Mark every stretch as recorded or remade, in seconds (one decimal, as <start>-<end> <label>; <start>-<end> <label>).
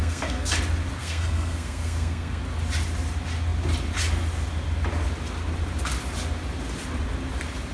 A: 0.0-0.5 remade; 0.5-1.0 recorded; 1.0-2.4 remade; 2.4-7.7 recorded